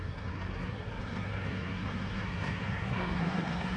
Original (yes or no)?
no